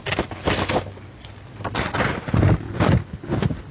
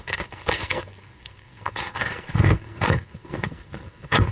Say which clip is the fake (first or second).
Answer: second